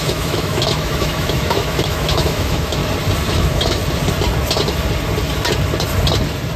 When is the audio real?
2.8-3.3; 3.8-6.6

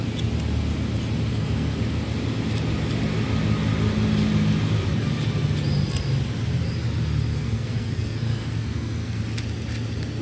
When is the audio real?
0.0-1.3; 1.8-7.3; 9.2-10.2

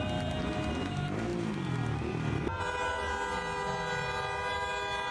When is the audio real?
0.0-5.1

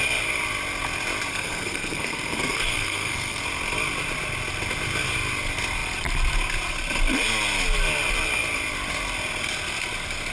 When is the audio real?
0.0-1.3; 3.4-10.3